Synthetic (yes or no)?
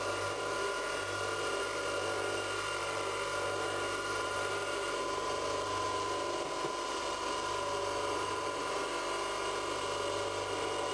no